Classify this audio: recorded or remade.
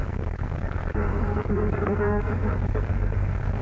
remade